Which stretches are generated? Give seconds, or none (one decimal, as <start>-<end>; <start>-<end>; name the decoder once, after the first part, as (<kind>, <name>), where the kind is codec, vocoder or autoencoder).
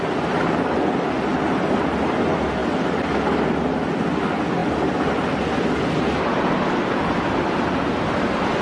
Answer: none